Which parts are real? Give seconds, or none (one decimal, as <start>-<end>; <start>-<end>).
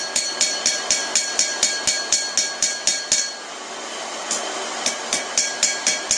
0.0-6.2